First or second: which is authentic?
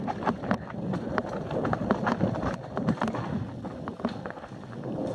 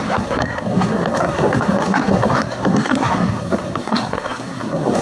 first